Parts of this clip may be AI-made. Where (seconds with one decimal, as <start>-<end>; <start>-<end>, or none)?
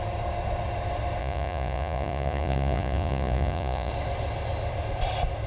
1.2-3.9